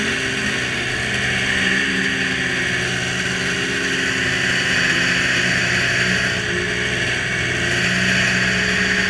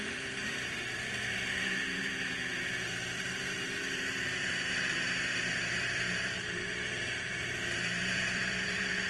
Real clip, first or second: first